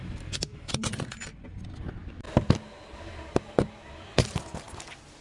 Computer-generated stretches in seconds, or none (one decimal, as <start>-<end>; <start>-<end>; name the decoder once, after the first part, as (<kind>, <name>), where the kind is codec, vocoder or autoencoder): 0.5-1.2 (vocoder, Vocos)